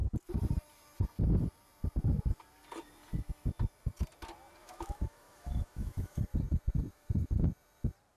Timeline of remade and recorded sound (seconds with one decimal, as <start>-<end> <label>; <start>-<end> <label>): 0.0-4.6 recorded; 4.6-6.2 remade; 6.2-6.9 recorded; 6.9-7.4 remade; 7.4-8.2 recorded

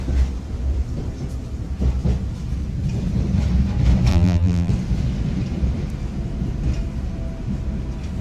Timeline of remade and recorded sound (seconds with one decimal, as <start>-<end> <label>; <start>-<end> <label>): 0.0-4.1 recorded; 4.1-4.7 remade; 4.7-8.2 recorded

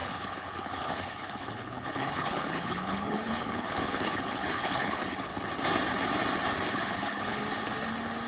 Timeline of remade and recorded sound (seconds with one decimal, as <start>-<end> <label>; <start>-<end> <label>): 0.0-5.3 remade; 5.3-6.7 recorded; 6.7-7.4 remade; 7.4-8.3 recorded

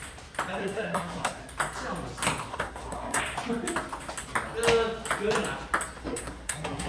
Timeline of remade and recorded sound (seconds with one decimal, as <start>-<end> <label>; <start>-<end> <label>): 0.0-0.6 recorded; 0.6-1.4 remade; 1.4-2.5 recorded; 2.5-3.2 remade; 3.2-6.0 recorded; 6.0-6.9 remade

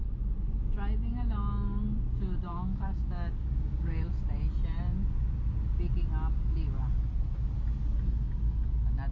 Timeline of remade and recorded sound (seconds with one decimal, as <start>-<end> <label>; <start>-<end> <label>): 0.0-2.5 recorded; 2.5-4.0 remade; 4.0-9.1 recorded

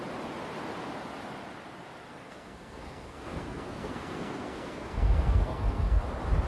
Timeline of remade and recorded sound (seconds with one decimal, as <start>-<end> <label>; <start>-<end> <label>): 0.0-2.1 recorded; 2.1-6.0 remade; 6.0-6.5 recorded

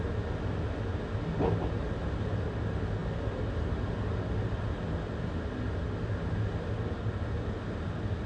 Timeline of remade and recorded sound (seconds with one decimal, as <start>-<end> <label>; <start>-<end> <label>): 0.0-8.3 recorded